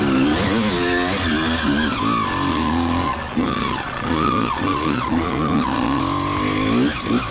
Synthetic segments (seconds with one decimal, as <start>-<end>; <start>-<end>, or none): 2.5-6.0